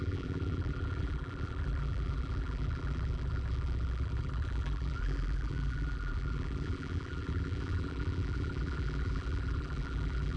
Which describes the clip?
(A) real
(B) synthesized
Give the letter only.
B